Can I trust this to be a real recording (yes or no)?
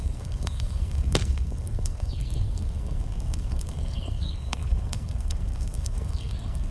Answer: no